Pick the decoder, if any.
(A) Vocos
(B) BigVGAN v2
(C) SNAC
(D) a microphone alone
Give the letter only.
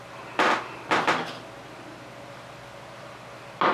D